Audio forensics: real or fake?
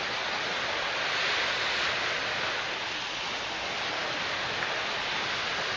real